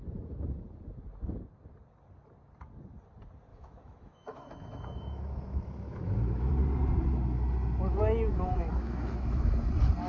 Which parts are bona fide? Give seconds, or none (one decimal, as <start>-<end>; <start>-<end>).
0.0-3.5; 6.5-8.3; 9.7-10.1